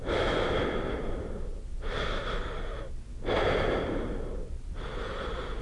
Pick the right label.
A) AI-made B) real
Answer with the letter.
B